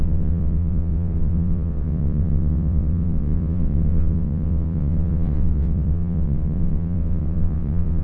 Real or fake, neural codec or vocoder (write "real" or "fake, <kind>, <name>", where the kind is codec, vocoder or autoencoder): fake, vocoder, WaveNeXt